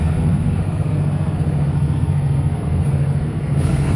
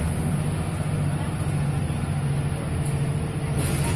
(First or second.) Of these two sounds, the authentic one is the second